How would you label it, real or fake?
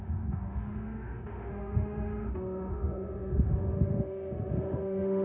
fake